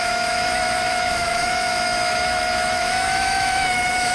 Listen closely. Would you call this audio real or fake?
fake